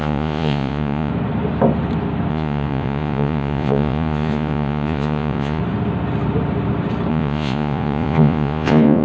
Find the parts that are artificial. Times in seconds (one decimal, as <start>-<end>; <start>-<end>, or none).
0.0-1.1; 2.3-5.6; 7.1-9.0